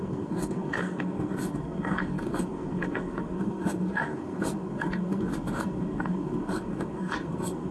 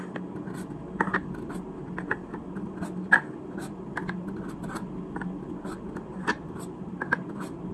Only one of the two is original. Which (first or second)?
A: second